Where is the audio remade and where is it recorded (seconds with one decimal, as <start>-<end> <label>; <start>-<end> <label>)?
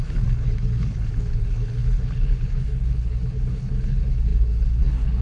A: 0.0-5.2 remade